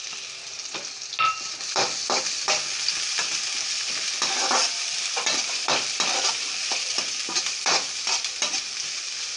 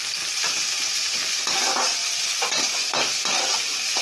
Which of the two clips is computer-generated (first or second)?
first